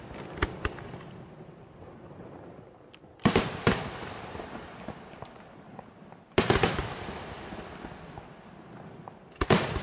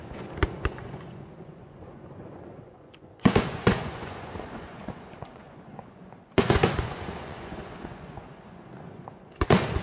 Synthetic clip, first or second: second